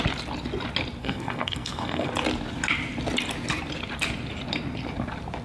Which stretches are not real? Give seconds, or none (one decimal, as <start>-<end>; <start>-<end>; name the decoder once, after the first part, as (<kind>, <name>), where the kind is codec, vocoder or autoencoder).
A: 1.0-2.1 (codec, SNAC)